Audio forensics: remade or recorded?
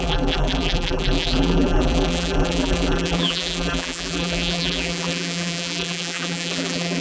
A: remade